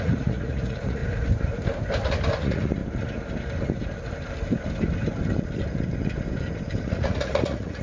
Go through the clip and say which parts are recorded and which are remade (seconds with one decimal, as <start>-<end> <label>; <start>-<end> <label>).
0.0-1.0 remade; 1.0-2.4 recorded; 2.4-2.8 remade; 2.8-6.8 recorded; 6.8-7.8 remade